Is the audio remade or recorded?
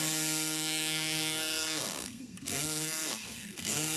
remade